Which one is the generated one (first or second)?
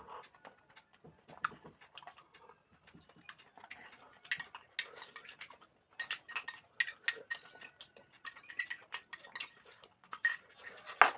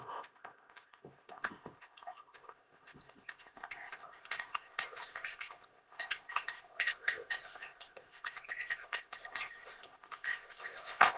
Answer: second